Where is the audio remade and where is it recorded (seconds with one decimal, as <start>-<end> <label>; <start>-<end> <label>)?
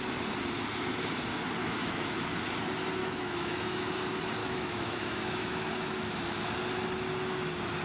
0.0-1.6 recorded; 1.6-2.2 remade; 2.2-3.0 recorded; 3.0-3.9 remade; 3.9-4.4 recorded; 4.4-6.5 remade; 6.5-7.8 recorded